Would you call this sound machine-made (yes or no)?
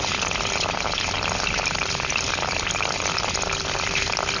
no